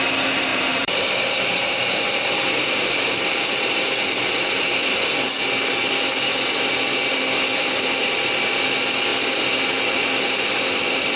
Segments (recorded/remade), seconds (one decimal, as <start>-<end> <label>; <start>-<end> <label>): 0.0-0.5 recorded; 0.5-4.0 remade; 4.0-7.5 recorded; 7.5-8.0 remade; 8.0-11.2 recorded